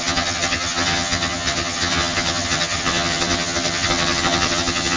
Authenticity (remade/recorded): remade